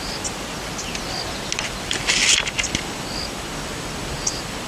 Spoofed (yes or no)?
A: no